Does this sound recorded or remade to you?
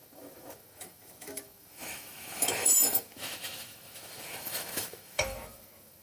remade